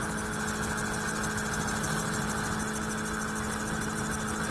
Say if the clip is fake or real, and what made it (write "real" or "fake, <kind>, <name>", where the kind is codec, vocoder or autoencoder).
real